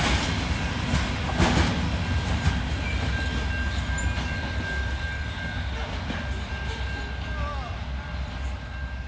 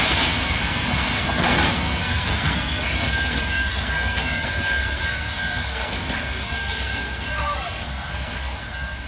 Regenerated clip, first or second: second